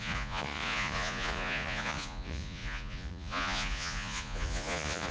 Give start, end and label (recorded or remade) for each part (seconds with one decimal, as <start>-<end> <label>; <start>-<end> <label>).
0.0-5.1 remade